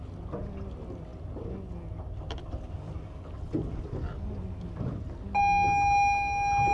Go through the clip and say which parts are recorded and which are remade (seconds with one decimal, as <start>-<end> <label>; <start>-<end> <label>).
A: 0.0-6.7 recorded